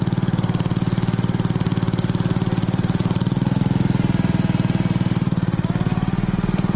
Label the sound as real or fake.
real